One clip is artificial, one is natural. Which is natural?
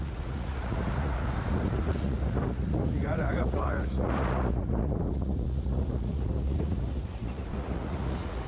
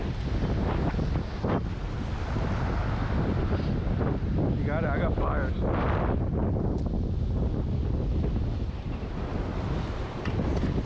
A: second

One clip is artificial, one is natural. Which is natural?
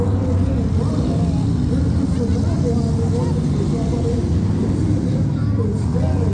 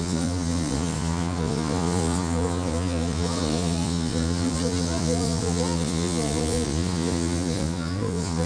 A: first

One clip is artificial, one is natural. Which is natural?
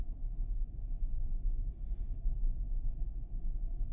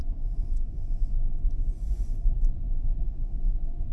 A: first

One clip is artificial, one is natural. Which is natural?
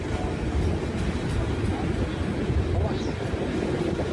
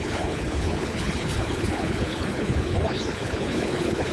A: first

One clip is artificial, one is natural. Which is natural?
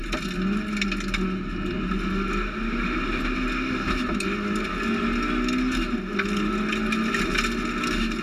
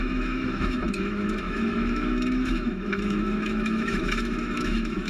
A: first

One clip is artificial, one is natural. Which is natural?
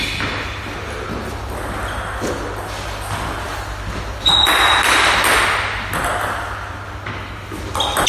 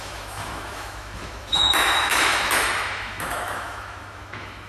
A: first